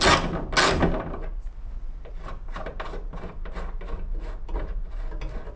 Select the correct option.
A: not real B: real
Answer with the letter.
B